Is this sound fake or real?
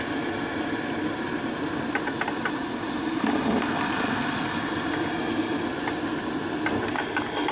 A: real